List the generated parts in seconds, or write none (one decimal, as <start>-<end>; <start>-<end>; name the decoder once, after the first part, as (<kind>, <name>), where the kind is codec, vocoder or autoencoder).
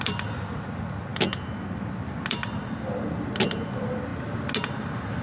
0.0-1.1 (vocoder, BigVGAN v2); 1.9-4.1; 4.7-5.2